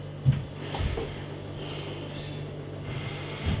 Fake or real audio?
real